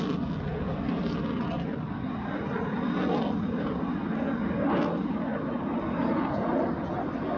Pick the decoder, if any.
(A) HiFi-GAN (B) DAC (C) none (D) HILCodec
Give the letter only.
C